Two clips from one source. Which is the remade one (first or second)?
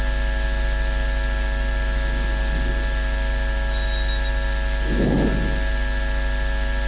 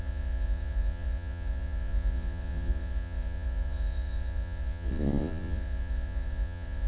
second